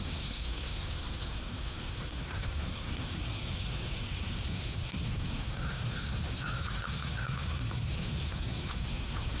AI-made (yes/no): yes